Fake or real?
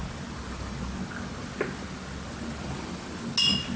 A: real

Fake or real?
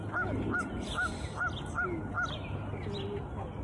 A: real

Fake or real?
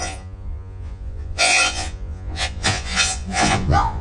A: fake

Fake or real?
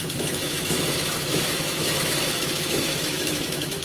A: fake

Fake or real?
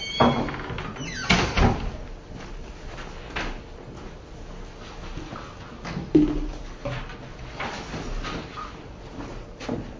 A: real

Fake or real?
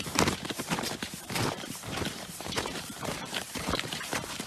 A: fake